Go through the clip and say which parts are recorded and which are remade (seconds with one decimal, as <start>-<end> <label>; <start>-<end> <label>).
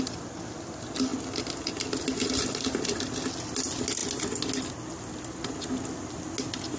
0.0-6.8 recorded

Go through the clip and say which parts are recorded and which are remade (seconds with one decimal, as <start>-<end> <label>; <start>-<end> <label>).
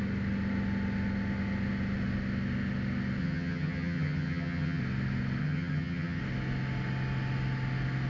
0.0-3.2 recorded; 3.2-4.8 remade; 4.8-5.4 recorded; 5.4-6.2 remade; 6.2-8.1 recorded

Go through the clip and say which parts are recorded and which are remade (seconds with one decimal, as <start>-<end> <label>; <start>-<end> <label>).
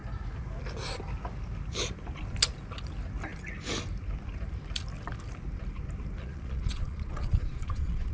0.0-6.2 recorded; 6.2-8.1 remade